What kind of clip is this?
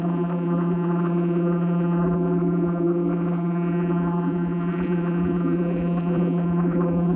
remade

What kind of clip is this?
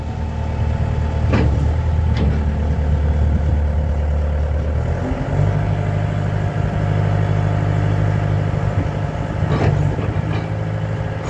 recorded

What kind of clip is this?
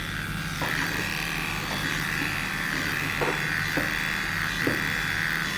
recorded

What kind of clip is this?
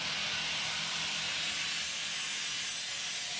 recorded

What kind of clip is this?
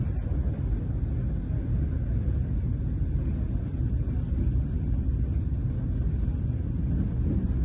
recorded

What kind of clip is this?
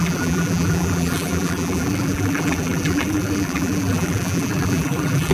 remade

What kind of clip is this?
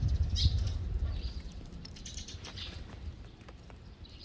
remade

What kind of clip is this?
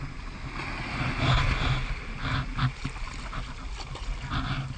recorded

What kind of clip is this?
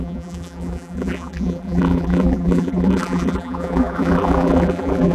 remade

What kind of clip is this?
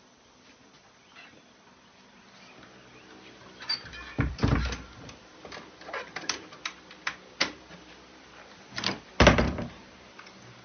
remade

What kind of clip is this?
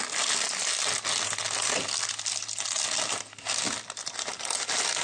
recorded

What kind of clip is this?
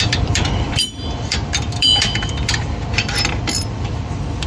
remade